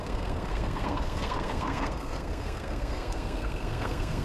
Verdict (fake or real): fake